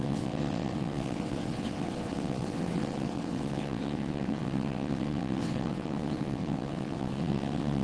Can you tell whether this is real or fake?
fake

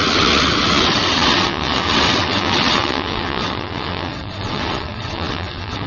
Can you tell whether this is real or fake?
fake